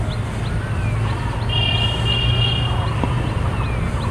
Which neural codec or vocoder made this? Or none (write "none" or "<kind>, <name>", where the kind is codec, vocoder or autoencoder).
none